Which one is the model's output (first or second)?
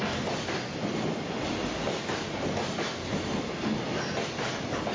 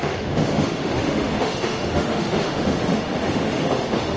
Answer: second